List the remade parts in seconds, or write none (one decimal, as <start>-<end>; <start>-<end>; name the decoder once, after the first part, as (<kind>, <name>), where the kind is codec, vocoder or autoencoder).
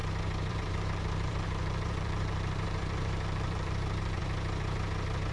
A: 0.5-4.2 (vocoder, BigVGAN v2)